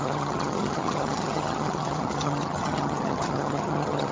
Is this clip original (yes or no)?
no